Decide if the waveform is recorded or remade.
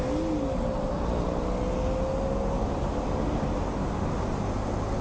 recorded